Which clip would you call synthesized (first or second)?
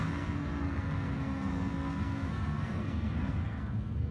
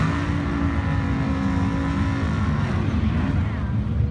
first